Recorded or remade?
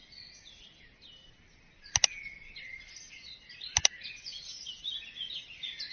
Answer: recorded